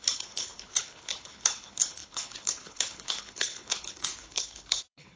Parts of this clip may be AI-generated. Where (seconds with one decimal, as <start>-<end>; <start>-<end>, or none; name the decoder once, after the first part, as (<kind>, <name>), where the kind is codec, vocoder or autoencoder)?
0.0-5.2 (codec, HILCodec)